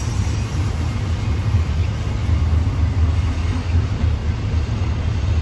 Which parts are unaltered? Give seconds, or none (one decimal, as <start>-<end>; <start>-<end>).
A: 1.8-3.7; 4.2-5.4